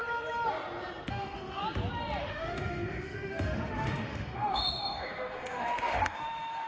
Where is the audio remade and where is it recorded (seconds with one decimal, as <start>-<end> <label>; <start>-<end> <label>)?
0.0-1.1 recorded; 1.1-1.6 remade; 1.6-2.2 recorded; 2.2-6.7 remade